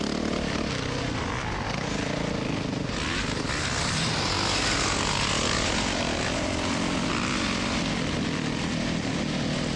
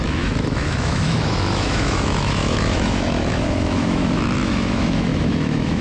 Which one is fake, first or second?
second